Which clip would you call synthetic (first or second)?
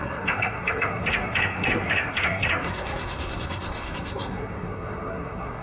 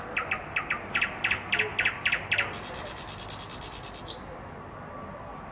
first